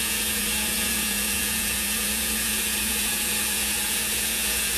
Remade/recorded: remade